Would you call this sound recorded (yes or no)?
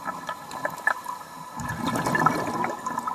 yes